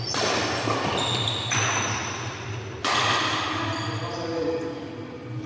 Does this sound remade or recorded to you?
recorded